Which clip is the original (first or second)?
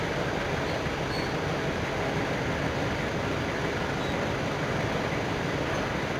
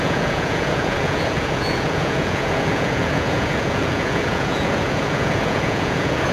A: first